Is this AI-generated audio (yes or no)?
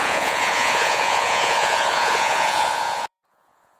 yes